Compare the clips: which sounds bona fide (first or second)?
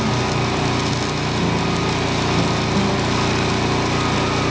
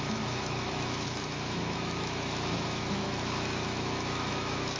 first